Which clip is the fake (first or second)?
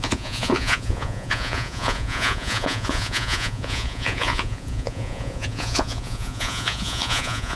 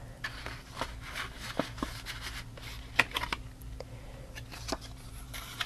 first